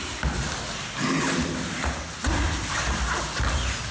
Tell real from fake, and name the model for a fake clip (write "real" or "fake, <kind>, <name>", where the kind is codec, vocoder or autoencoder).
real